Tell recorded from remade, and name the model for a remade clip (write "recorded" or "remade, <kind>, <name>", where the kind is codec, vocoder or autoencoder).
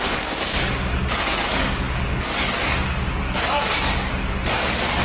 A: remade, codec, DAC